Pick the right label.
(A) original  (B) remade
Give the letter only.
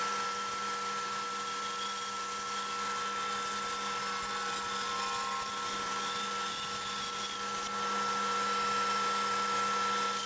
A